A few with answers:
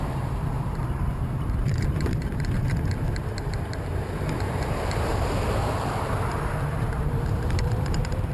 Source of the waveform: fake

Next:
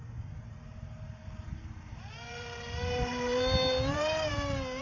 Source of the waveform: fake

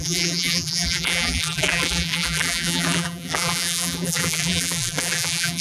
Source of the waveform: fake